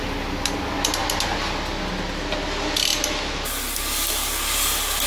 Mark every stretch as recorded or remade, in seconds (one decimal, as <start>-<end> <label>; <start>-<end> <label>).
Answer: 0.0-5.1 recorded